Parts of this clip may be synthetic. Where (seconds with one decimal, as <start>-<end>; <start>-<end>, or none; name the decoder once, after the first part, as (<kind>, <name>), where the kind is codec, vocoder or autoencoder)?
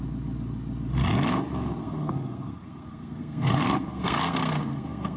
1.8-5.2 (codec, SNAC)